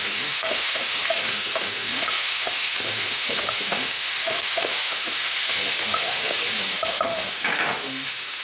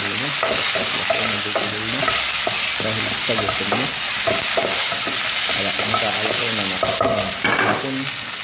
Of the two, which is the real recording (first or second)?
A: second